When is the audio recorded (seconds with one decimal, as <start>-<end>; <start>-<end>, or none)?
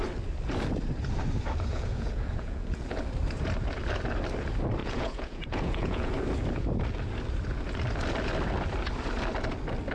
0.0-1.7; 3.0-4.8; 6.1-9.9